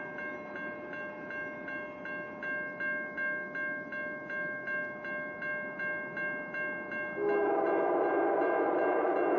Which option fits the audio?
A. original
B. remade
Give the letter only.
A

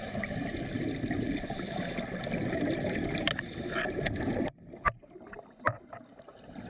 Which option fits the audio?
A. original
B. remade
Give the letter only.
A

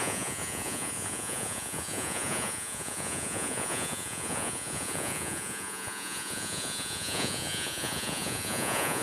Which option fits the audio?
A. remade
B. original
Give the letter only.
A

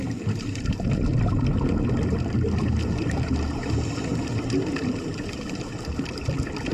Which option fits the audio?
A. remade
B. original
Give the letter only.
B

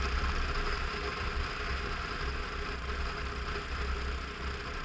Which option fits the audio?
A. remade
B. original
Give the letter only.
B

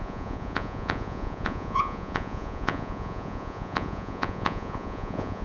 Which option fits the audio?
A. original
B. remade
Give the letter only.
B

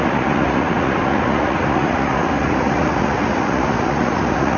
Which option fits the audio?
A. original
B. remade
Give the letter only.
B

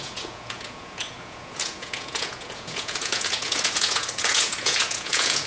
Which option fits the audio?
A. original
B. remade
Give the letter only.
B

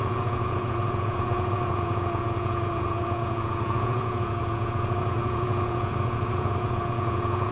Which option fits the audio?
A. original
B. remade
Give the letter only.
B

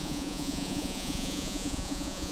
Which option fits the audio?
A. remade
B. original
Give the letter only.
A